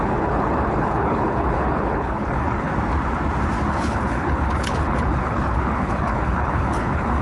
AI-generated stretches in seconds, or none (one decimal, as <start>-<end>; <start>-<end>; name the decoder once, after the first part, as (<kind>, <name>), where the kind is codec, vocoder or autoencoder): 0.0-2.7 (codec, HILCodec); 3.7-7.2